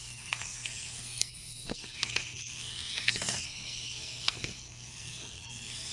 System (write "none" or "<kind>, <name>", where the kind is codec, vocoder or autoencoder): codec, SNAC